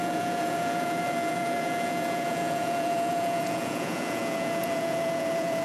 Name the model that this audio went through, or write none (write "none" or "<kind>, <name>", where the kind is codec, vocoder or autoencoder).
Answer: vocoder, Vocos